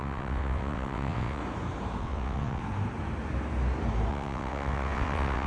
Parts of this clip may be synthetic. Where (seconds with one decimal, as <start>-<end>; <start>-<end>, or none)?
0.0-1.4; 2.0-2.6; 4.1-5.5

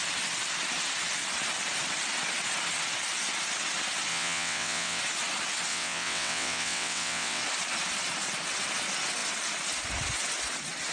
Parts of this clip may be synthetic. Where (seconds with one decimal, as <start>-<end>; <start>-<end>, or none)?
4.1-5.0; 5.7-7.4

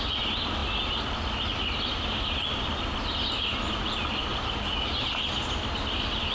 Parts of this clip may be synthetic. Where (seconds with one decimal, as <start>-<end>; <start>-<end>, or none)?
none

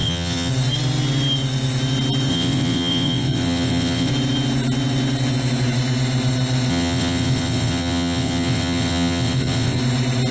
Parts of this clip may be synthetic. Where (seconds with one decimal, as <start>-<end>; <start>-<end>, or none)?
0.0-0.5; 2.3-4.1; 6.7-9.8

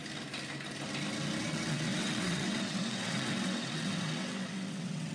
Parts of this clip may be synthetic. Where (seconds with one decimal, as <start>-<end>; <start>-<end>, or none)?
1.4-5.1

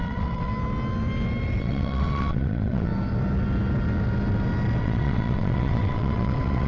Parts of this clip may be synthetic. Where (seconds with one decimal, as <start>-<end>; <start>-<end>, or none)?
0.0-0.5; 1.6-2.9; 4.8-6.7

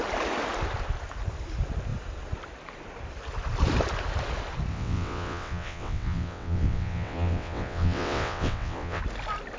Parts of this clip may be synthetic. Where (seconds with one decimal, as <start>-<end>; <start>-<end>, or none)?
4.7-9.0

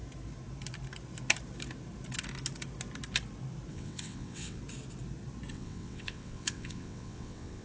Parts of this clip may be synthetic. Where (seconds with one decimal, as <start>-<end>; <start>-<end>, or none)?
3.7-4.6; 5.5-7.6